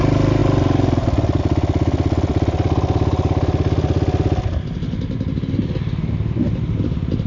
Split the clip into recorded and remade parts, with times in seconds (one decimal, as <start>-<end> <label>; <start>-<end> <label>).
0.0-7.3 recorded